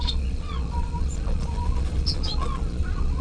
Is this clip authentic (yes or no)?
no